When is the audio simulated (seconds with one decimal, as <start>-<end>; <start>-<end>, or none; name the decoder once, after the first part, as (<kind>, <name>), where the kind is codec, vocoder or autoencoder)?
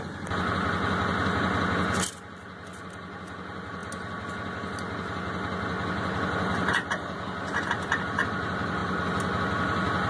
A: none